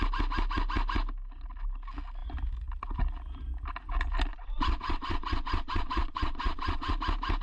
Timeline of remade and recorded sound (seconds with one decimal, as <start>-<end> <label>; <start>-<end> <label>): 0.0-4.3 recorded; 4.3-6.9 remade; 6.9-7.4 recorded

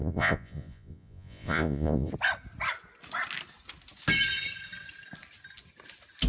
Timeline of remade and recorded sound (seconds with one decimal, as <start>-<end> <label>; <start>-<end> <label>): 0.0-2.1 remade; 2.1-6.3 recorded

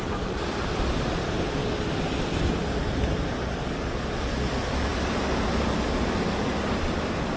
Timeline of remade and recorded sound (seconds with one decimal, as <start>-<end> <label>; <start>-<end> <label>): 0.0-1.6 remade; 1.6-4.2 recorded; 4.2-4.9 remade; 4.9-6.2 recorded; 6.2-7.4 remade

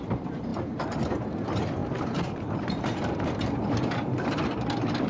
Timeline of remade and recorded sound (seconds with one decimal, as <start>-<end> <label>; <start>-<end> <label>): 0.0-5.1 remade

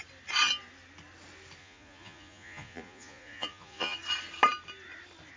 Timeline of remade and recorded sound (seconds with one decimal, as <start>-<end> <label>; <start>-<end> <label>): 0.0-1.6 recorded; 1.6-4.0 remade; 4.0-5.4 recorded